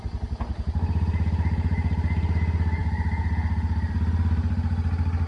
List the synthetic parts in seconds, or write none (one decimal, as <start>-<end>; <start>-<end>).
none